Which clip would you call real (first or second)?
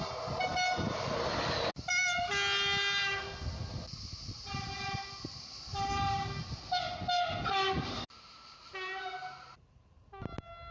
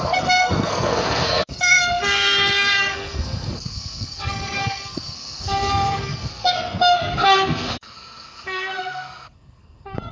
first